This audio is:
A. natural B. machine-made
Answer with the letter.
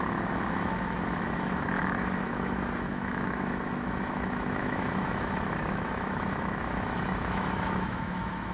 B